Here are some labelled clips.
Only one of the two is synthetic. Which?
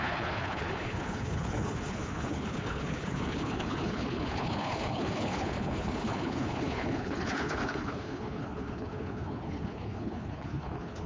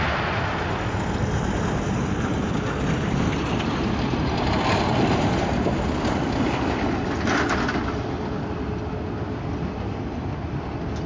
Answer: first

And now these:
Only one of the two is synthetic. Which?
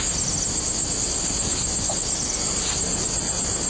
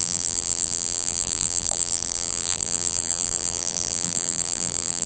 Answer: second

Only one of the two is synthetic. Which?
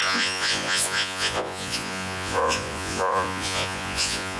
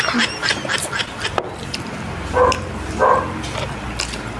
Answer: first